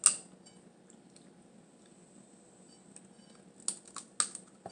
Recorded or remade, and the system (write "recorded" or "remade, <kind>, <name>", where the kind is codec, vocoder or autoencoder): recorded